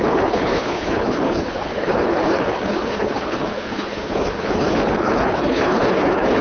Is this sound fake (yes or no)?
yes